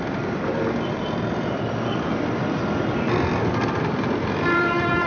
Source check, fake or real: fake